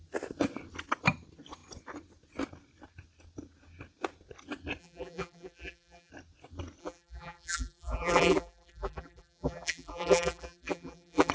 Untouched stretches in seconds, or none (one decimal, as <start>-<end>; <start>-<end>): 0.0-4.8; 6.1-6.8